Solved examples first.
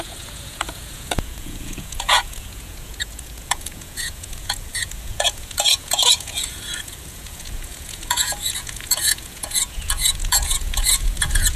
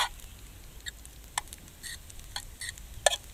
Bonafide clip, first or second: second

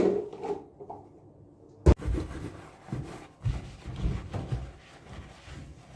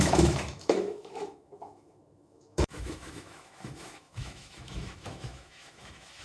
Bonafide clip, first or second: first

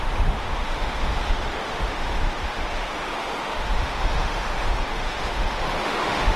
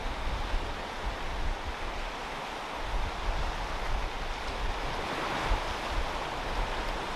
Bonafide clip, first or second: second